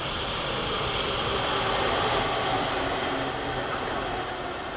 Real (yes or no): yes